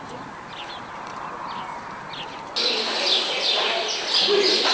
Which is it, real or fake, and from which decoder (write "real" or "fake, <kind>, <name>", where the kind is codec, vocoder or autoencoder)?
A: real